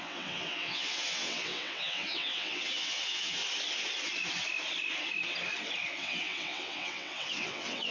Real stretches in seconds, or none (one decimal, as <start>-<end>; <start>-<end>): 3.4-6.0